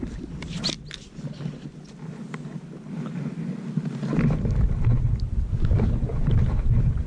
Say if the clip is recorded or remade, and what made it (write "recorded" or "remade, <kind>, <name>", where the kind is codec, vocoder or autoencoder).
recorded